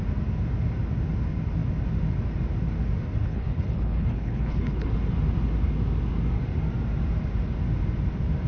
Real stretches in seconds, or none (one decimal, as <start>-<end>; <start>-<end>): 0.0-3.2; 4.9-8.5